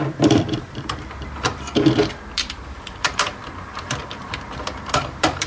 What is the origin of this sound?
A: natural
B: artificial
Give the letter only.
B